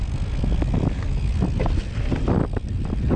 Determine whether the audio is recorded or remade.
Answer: recorded